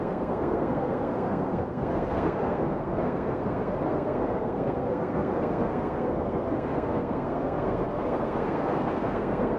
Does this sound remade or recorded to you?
remade